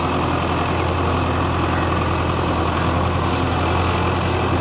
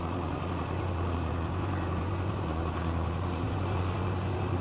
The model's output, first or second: second